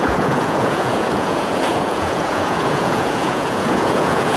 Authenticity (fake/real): fake